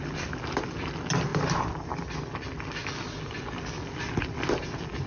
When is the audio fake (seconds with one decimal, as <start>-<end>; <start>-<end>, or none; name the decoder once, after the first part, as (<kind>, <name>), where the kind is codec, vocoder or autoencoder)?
none